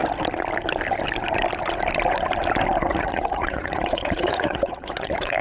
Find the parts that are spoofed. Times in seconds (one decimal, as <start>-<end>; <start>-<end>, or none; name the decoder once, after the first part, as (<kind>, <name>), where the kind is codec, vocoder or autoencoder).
2.9-5.4 (vocoder, Vocos)